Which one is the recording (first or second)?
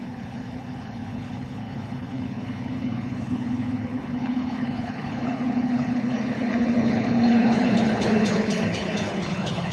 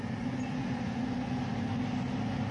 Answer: second